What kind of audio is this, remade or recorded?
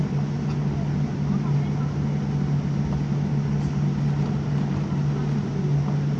recorded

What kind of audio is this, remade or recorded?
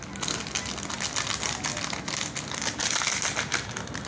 recorded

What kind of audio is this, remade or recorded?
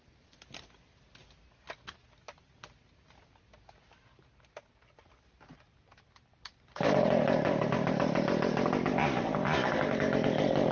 recorded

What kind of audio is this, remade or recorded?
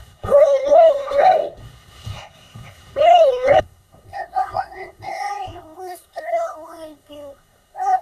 remade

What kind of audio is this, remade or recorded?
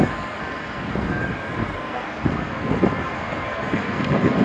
remade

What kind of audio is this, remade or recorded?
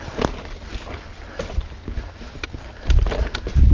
recorded